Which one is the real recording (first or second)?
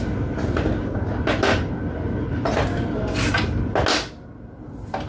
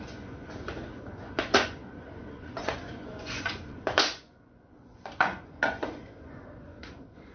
first